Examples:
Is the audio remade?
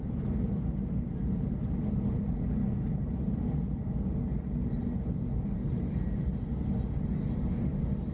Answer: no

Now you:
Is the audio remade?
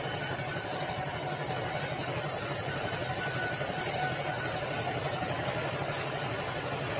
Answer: no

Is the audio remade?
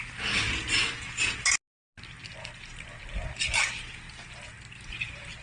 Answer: no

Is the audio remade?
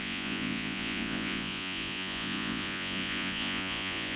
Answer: yes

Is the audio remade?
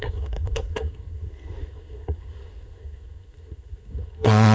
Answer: yes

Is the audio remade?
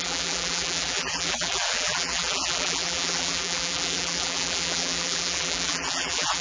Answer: yes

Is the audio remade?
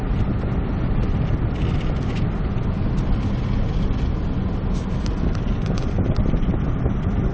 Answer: no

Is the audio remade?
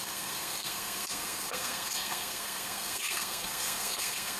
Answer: yes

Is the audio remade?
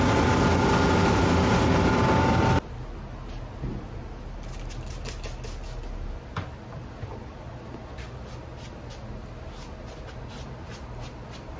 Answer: no